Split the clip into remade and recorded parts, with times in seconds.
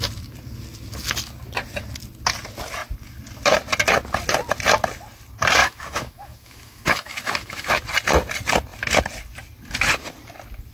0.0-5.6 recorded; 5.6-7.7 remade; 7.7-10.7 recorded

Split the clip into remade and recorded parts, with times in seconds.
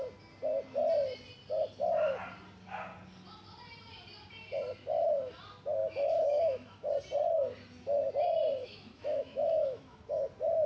0.0-5.8 recorded; 5.8-6.9 remade; 6.9-8.6 recorded; 8.6-10.0 remade; 10.0-10.7 recorded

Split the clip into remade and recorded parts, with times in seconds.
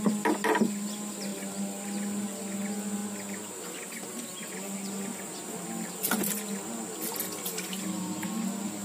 0.0-8.8 recorded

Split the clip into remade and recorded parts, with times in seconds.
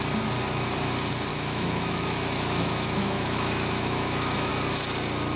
0.0-1.3 recorded; 1.3-4.5 remade; 4.5-5.4 recorded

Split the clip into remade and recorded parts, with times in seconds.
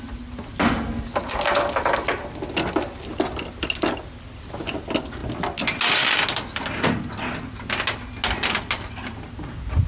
0.0-9.9 recorded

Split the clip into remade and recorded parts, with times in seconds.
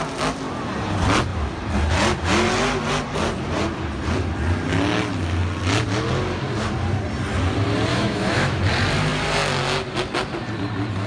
0.0-7.9 recorded; 7.9-8.6 remade; 8.6-11.1 recorded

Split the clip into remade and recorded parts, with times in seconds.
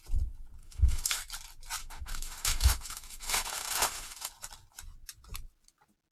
0.0-0.6 recorded; 0.6-1.2 remade; 1.2-1.8 recorded; 1.8-4.3 remade; 4.3-6.1 recorded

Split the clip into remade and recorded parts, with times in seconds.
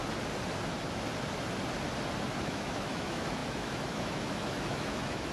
0.0-2.4 recorded; 2.4-5.3 remade